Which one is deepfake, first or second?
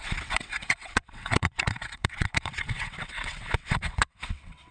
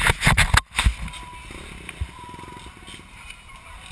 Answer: first